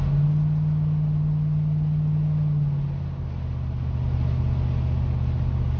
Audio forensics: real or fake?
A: real